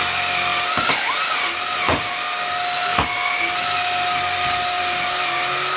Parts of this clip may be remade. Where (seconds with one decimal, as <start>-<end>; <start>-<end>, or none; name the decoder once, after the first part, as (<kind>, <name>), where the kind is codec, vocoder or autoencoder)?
none